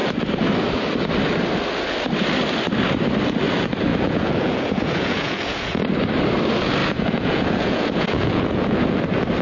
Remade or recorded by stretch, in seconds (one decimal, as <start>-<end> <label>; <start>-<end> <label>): 0.0-3.9 recorded; 3.9-5.8 remade; 5.8-6.8 recorded; 6.8-9.0 remade; 9.0-9.4 recorded